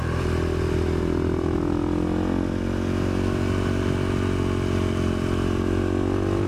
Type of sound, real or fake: real